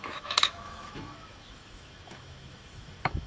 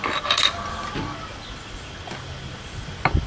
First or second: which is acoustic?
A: second